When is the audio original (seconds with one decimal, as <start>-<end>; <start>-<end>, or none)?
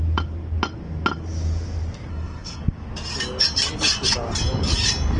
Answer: 0.0-2.1; 2.6-5.2